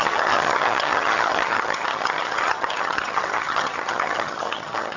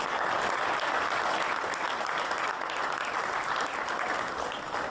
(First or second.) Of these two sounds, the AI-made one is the first